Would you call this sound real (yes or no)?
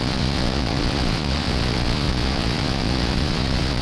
no